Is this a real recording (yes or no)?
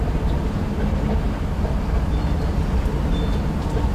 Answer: yes